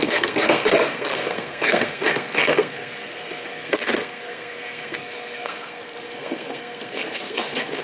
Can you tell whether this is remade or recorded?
remade